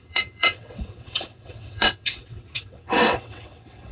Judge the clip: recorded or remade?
remade